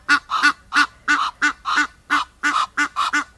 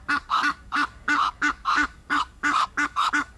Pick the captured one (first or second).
first